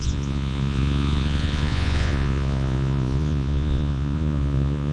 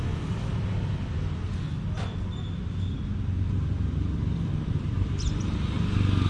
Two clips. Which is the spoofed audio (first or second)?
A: first